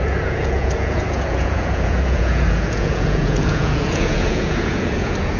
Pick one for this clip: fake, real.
fake